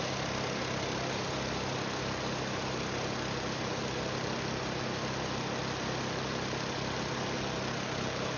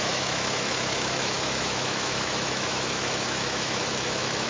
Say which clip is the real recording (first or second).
first